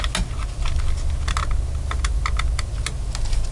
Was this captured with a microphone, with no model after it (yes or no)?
yes